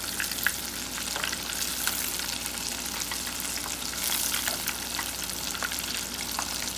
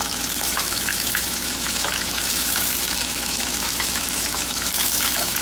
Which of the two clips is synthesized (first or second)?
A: second